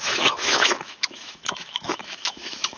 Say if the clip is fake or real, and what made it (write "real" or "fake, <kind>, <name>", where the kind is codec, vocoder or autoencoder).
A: fake, autoencoder, DAC-VAE